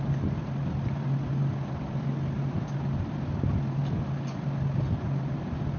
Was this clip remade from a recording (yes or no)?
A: no